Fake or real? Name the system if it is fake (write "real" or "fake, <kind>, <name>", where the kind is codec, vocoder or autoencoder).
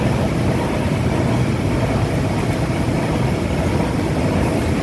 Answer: real